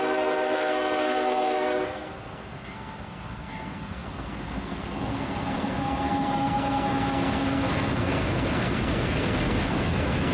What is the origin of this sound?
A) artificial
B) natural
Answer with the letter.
A